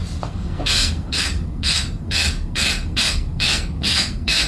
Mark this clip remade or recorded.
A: remade